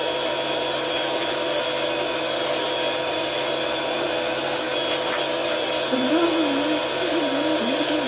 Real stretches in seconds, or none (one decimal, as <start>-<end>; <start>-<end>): 0.0-8.1